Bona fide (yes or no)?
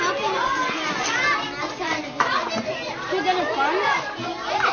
yes